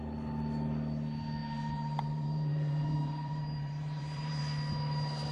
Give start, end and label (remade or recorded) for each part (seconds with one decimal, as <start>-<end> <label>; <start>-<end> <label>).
0.0-1.4 recorded; 1.4-4.4 remade; 4.4-5.3 recorded